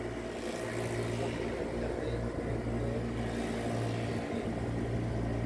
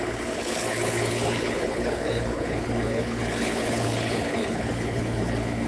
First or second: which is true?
first